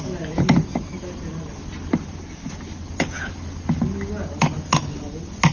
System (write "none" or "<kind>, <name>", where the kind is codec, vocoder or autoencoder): none